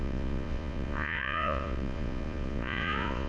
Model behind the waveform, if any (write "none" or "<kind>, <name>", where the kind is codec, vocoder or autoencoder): vocoder, Vocos